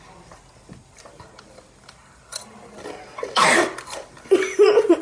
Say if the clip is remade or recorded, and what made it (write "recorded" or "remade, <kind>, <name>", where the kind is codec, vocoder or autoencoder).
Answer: recorded